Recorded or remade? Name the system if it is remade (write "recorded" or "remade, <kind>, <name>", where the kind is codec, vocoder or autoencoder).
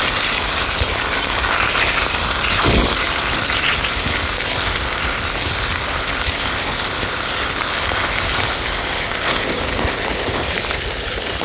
recorded